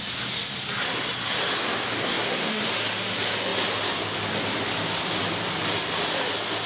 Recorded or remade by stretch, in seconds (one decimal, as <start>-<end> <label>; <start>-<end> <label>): 0.0-2.0 recorded; 2.0-2.6 remade; 2.6-6.7 recorded